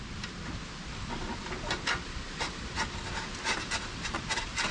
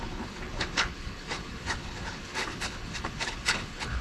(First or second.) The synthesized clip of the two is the second